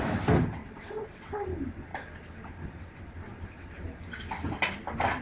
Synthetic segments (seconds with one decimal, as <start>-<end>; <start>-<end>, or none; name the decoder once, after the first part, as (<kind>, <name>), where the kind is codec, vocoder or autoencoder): 0.6-1.3 (vocoder, WaveNeXt)